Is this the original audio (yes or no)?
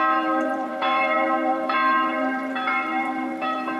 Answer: no